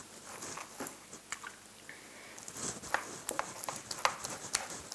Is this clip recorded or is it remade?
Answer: recorded